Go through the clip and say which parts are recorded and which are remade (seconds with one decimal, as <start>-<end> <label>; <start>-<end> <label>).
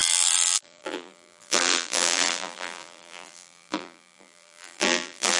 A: 0.0-5.4 remade